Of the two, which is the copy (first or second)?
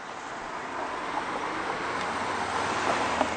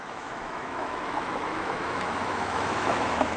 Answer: second